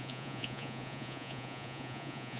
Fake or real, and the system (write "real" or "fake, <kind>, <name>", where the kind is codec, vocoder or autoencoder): fake, vocoder, Vocos